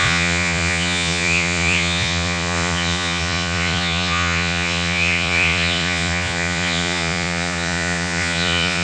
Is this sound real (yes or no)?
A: no